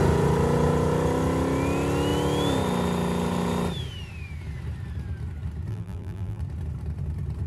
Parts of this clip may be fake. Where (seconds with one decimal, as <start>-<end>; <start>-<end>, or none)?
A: 5.7-6.4